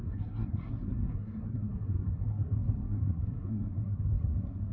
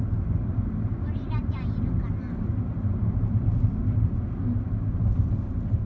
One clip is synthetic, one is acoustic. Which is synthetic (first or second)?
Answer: first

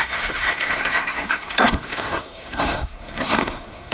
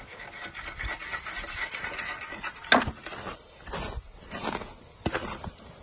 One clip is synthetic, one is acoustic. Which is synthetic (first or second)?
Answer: first